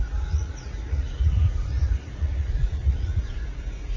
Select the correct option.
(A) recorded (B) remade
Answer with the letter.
B